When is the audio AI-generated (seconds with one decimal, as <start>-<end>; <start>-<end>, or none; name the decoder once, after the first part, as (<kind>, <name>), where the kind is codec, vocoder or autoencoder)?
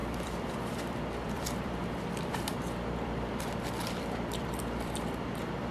0.0-5.7 (vocoder, BigVGAN v2)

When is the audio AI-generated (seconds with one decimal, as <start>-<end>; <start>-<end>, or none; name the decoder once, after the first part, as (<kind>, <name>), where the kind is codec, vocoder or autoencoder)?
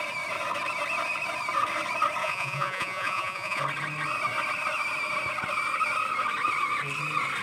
2.2-3.6 (vocoder, Vocos)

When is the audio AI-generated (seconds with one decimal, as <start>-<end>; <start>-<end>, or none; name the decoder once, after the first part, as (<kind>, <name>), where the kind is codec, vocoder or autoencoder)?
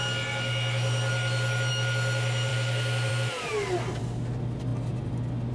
none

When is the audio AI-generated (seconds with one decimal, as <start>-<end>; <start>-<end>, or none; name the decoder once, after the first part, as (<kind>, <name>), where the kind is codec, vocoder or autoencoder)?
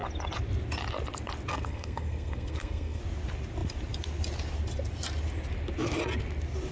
1.5-3.0 (codec, SNAC)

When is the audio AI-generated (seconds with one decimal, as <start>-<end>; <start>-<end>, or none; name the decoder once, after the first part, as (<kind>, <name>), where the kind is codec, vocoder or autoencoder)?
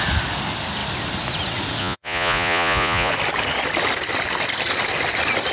1.8-3.1 (vocoder, Vocos)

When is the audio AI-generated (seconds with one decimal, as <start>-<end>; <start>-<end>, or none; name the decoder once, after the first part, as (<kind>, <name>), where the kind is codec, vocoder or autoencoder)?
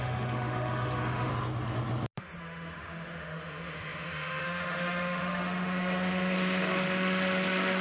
0.0-1.3 (autoencoder, DAC-VAE); 2.4-7.8